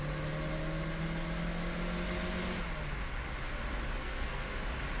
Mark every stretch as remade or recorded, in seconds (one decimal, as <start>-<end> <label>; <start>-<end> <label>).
0.0-4.0 recorded; 4.0-4.5 remade; 4.5-5.0 recorded